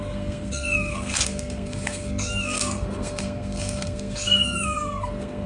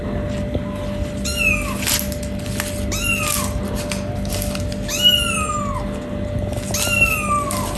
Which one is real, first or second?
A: second